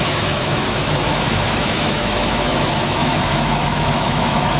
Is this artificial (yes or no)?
yes